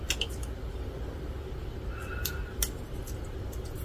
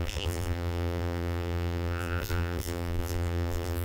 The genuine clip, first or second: first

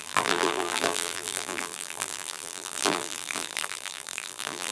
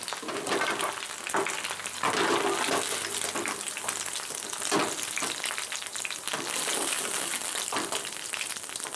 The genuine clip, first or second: second